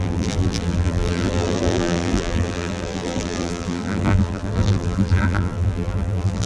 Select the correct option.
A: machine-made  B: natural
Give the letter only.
A